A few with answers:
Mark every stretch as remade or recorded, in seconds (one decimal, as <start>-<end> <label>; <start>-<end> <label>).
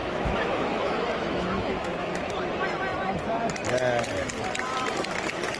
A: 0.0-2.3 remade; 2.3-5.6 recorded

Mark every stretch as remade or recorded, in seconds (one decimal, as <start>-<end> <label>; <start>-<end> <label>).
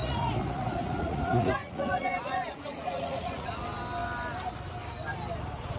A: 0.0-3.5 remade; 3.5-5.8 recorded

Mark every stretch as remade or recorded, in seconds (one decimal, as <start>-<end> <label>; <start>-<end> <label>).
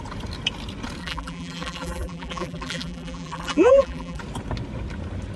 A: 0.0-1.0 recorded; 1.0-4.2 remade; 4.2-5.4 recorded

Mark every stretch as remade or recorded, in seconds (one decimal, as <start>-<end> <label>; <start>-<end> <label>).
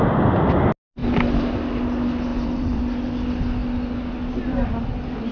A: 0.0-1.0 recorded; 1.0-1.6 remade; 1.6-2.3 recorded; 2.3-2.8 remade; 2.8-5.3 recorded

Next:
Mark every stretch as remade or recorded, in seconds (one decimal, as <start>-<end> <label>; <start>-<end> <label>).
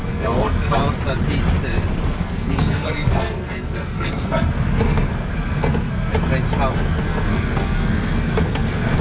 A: 0.0-0.8 remade; 0.8-2.1 recorded; 2.1-6.1 remade; 6.1-6.7 recorded; 6.7-9.0 remade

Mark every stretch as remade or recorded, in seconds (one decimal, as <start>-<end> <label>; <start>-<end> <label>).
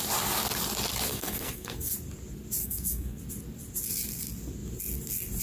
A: 0.0-1.1 recorded; 1.1-1.9 remade; 1.9-2.6 recorded; 2.6-3.2 remade; 3.2-5.4 recorded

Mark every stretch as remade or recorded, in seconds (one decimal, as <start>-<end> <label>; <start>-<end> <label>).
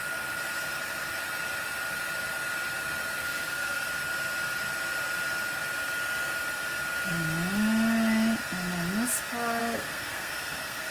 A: 0.0-3.2 recorded; 3.2-3.9 remade; 3.9-9.6 recorded; 9.6-10.9 remade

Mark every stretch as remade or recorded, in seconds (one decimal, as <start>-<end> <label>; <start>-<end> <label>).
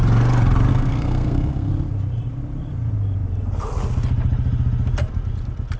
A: 0.0-0.7 recorded; 0.7-1.7 remade; 1.7-5.8 recorded